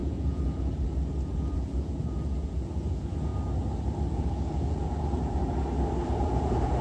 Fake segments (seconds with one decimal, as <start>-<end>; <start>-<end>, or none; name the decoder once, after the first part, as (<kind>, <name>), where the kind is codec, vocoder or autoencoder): 0.0-3.3 (vocoder, Vocos); 4.1-5.4; 6.0-6.8